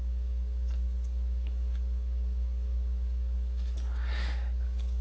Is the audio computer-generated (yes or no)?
yes